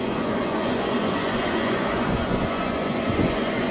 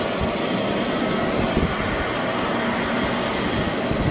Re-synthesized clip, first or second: first